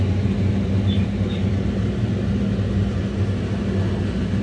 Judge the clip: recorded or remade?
recorded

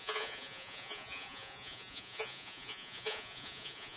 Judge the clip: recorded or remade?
remade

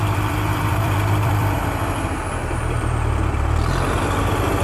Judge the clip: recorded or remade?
remade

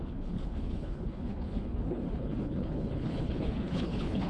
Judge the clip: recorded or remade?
remade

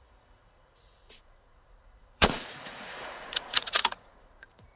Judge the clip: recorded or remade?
remade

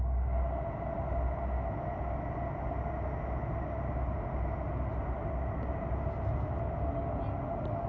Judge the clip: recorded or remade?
recorded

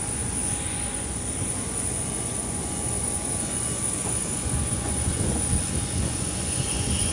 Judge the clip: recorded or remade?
remade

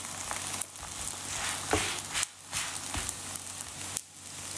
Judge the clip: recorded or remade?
recorded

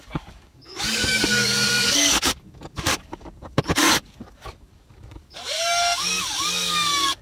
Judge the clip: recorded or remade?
remade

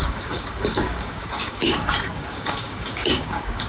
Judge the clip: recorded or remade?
remade